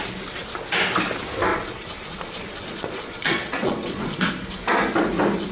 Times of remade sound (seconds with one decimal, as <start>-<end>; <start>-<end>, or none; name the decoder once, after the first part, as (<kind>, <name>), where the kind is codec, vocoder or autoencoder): 1.5-4.3 (vocoder, Vocos)